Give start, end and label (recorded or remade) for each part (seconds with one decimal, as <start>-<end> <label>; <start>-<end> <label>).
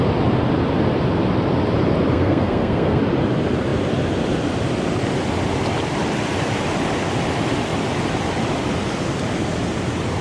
0.0-2.1 recorded; 2.1-3.0 remade; 3.0-10.2 recorded